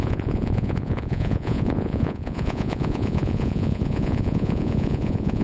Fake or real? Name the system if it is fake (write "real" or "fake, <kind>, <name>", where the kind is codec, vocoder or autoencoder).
fake, vocoder, Vocos